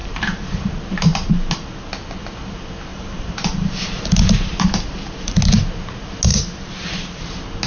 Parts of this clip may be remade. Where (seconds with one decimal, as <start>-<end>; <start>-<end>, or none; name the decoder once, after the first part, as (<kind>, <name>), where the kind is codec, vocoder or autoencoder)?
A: 0.0-0.7 (vocoder, BigVGAN v2); 2.9-5.4; 6.3-7.3